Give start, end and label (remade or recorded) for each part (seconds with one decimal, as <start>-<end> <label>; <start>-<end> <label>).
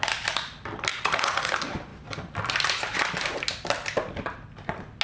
0.0-0.9 recorded; 0.9-1.5 remade; 1.5-5.0 recorded